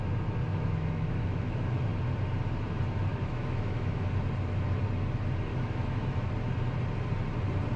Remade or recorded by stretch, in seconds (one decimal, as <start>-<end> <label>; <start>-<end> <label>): 0.0-0.5 recorded; 0.5-1.8 remade; 1.8-3.1 recorded; 3.1-4.1 remade; 4.1-5.5 recorded; 5.5-6.3 remade; 6.3-7.8 recorded